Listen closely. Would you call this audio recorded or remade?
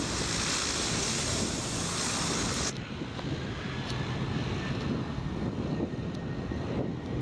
recorded